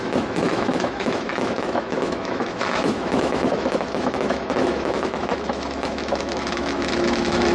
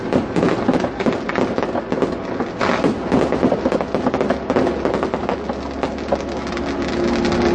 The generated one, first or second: first